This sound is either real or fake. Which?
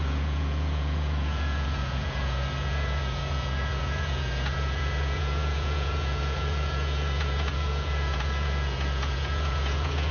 fake